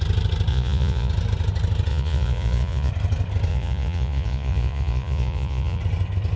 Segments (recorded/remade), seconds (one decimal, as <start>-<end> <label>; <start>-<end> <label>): 0.0-0.5 recorded; 0.5-1.1 remade; 1.1-1.9 recorded; 1.9-2.9 remade; 2.9-3.5 recorded; 3.5-5.8 remade; 5.8-6.4 recorded